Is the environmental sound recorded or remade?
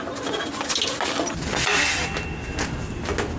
recorded